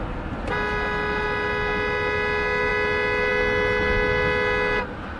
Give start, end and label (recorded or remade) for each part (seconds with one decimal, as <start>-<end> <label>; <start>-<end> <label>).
0.0-5.2 recorded